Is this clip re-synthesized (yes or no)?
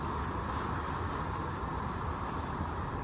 no